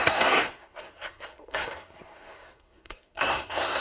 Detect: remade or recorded remade